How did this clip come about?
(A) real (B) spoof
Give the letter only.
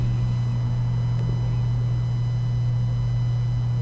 A